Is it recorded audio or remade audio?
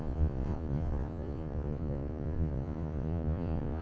remade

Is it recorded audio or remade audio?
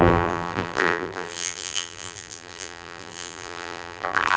remade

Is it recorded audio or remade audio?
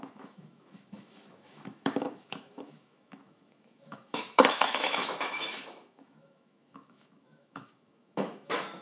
remade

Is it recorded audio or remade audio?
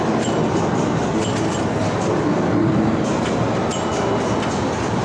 recorded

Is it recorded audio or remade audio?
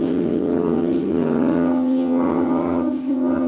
remade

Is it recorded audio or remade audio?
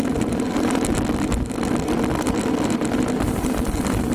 recorded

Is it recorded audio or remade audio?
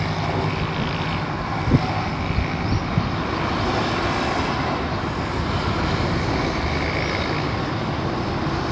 recorded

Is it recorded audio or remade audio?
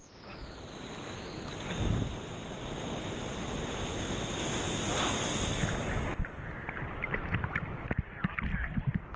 recorded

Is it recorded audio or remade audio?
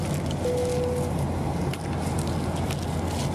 recorded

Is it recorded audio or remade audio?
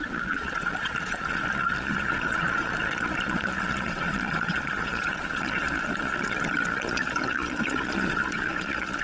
remade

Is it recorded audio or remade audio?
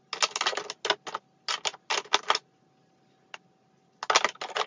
recorded